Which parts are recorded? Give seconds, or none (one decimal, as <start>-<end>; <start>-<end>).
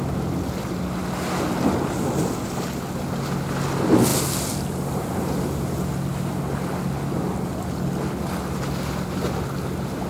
0.0-10.1